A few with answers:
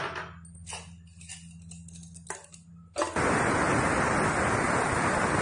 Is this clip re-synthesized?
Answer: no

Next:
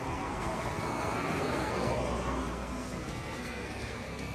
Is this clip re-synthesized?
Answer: yes